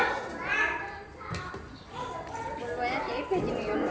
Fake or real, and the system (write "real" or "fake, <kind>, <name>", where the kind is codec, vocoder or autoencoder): real